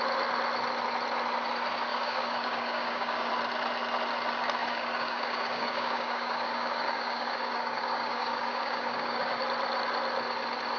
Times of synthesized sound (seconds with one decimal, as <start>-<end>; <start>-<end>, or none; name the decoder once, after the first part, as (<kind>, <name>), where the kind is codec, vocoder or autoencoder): 1.9-3.3 (codec, DAC); 4.6-9.4